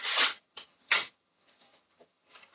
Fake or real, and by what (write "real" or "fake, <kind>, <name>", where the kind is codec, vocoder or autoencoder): fake, vocoder, HiFi-GAN